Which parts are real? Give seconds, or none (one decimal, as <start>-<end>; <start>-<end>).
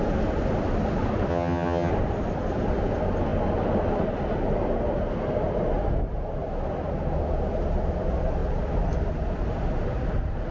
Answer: 0.0-1.3; 1.9-10.5